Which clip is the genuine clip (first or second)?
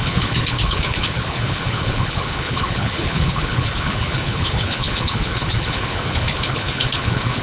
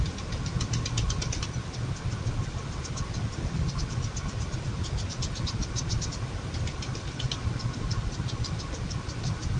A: second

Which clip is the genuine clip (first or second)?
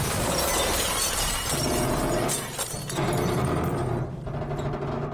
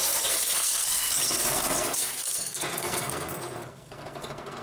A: first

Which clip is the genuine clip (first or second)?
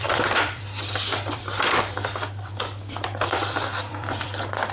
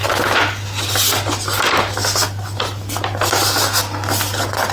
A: second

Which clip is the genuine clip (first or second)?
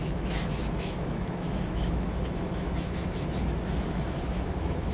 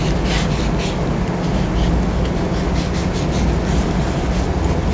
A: second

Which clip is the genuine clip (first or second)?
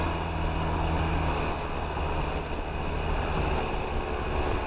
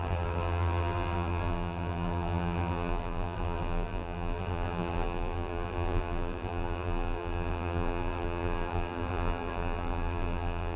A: first